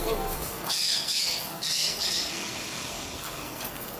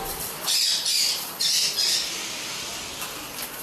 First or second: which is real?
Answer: second